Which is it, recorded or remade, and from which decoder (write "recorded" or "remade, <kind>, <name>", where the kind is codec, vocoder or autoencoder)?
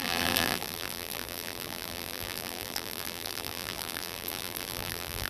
remade, vocoder, BigVGAN v2